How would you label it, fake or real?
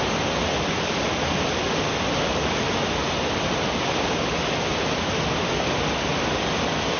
real